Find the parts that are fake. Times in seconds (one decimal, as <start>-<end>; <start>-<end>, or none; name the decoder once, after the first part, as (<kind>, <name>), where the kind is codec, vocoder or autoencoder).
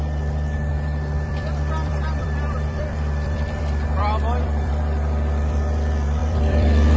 0.7-3.6 (vocoder, BigVGAN v2); 4.0-4.7; 6.2-7.0